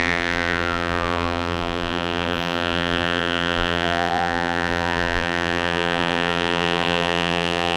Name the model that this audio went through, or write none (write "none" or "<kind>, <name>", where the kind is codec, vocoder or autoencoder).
vocoder, BigVGAN v2